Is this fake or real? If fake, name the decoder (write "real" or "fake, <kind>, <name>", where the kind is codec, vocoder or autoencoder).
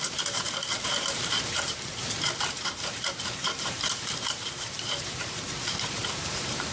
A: fake, vocoder, BigVGAN v2